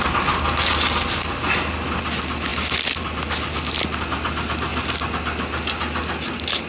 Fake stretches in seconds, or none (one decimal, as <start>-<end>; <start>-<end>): none